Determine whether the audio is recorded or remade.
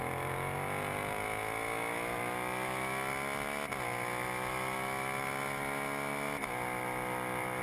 recorded